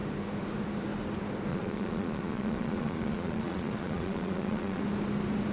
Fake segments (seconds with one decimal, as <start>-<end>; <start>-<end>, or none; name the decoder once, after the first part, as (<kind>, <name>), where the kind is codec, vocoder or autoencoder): 1.5-4.8 (vocoder, Vocos)